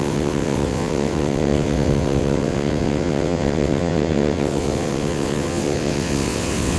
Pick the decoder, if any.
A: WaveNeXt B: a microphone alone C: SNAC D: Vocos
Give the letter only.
A